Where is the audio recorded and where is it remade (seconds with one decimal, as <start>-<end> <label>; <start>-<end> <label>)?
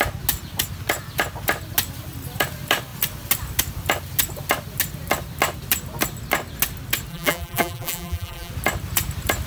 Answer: 0.0-7.1 recorded; 7.1-8.5 remade; 8.5-9.5 recorded